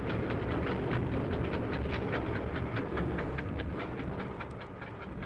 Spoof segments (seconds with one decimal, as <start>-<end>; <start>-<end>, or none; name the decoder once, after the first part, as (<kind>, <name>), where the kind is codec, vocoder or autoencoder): 2.8-3.8 (codec, SNAC)